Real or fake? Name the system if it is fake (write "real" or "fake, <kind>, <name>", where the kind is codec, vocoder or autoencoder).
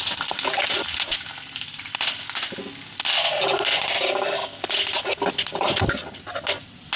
real